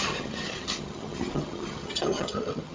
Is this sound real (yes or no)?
no